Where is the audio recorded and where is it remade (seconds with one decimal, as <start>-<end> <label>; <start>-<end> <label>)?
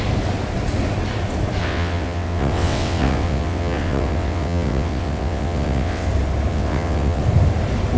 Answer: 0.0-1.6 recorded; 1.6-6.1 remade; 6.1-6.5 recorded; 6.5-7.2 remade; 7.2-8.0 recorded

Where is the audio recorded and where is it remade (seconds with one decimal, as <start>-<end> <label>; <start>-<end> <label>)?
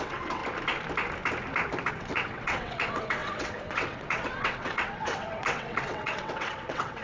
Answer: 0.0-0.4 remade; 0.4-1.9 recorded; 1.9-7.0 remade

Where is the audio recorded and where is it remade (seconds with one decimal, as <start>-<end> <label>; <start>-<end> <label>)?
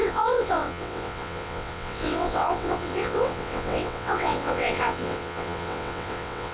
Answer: 0.0-6.5 remade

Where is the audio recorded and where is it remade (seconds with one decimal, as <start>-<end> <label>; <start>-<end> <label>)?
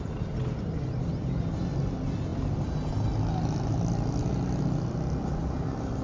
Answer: 0.0-6.0 recorded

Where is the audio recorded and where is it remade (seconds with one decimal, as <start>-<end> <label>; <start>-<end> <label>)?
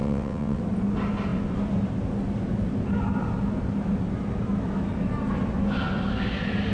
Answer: 0.0-0.6 remade; 0.6-6.7 recorded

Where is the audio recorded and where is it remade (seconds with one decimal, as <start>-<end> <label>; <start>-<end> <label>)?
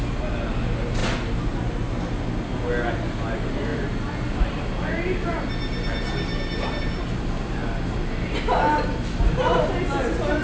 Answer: 0.0-10.4 recorded